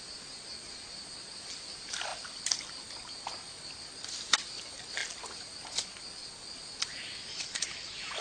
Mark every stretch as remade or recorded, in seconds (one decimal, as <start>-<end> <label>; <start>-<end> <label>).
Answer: 0.0-7.3 recorded; 7.3-8.2 remade